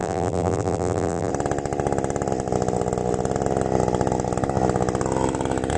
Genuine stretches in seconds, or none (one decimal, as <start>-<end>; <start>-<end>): 1.3-5.8